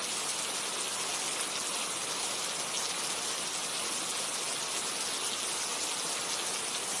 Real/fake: real